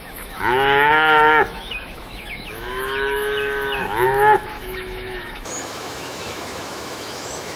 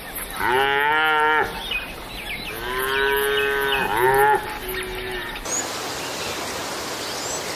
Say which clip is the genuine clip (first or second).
second